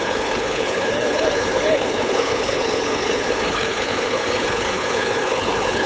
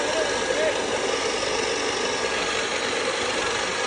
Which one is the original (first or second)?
second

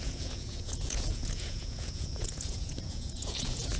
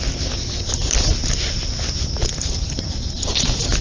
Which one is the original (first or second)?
second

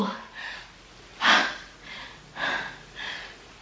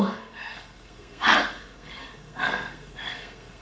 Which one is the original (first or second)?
first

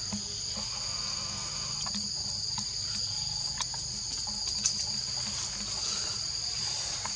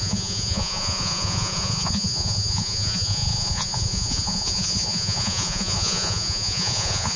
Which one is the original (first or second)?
first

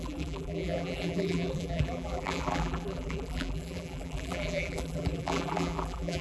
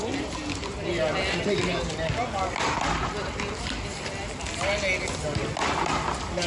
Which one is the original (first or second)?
second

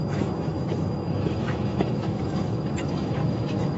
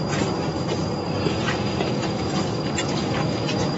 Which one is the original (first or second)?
second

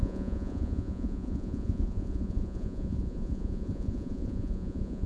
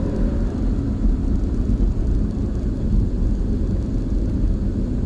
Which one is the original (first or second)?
second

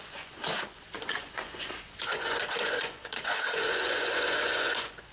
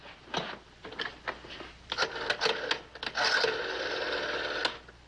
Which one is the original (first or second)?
second